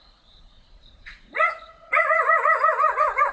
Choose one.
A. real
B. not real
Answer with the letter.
B